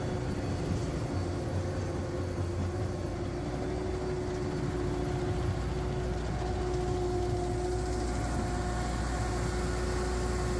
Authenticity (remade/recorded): recorded